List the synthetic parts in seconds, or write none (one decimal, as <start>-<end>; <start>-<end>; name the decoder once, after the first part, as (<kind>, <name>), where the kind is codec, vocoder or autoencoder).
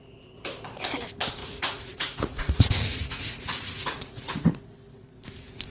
1.4-4.5 (vocoder, Vocos)